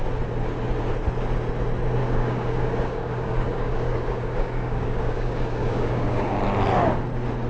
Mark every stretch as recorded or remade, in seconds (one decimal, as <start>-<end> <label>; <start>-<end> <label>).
0.0-2.0 recorded; 2.0-6.4 remade; 6.4-7.5 recorded